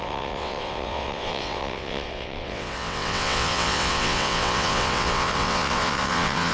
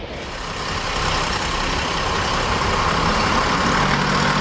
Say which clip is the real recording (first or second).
second